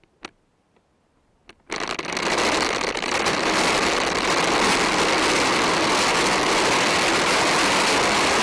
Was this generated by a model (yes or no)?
no